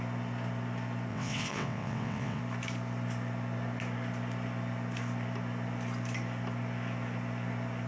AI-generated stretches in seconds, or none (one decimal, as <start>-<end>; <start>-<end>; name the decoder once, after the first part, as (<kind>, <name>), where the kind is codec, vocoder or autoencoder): 1.1-2.4 (vocoder, WaveNeXt)